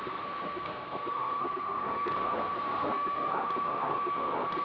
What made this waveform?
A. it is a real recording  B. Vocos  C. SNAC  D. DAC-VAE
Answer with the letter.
C